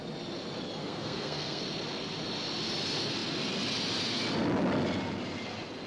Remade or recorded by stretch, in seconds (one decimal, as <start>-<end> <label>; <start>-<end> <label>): 0.0-0.8 recorded; 0.8-1.6 remade; 1.6-5.9 recorded